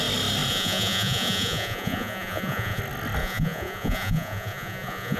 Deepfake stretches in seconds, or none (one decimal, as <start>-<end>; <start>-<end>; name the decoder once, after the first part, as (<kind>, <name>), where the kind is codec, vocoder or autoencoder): 0.5-2.8 (vocoder, Vocos); 3.2-5.2